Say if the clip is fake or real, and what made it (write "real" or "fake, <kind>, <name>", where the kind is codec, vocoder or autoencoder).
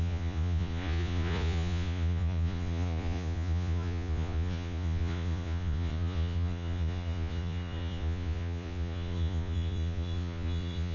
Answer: fake, vocoder, Vocos